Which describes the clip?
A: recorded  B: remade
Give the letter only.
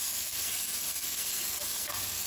B